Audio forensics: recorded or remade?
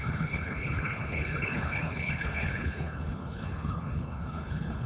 remade